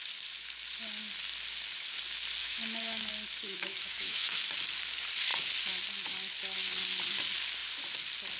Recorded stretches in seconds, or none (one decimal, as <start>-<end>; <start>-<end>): 0.0-2.4; 3.1-3.5; 4.4-8.4